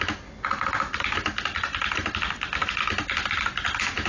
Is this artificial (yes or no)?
no